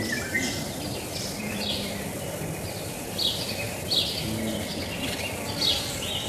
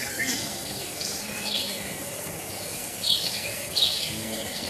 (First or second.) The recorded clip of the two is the first